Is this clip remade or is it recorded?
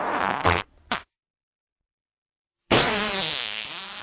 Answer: remade